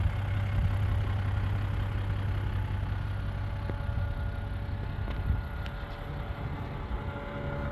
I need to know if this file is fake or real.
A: real